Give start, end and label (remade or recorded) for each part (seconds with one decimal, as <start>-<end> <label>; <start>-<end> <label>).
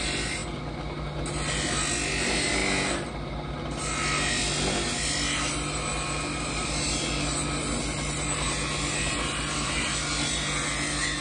0.0-11.2 recorded